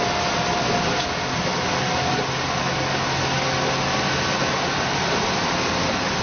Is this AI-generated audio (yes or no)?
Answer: no